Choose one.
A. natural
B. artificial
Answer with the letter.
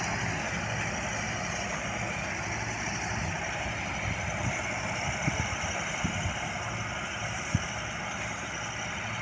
A